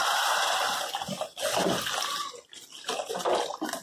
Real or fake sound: real